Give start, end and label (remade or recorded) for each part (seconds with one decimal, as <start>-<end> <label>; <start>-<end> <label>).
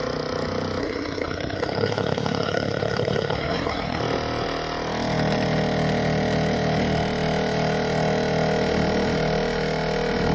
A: 0.0-0.8 recorded; 0.8-4.0 remade; 4.0-10.3 recorded